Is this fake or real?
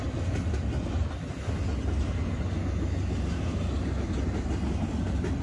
real